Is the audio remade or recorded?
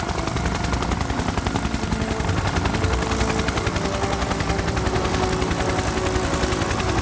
recorded